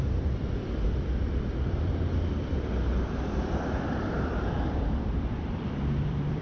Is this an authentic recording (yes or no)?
no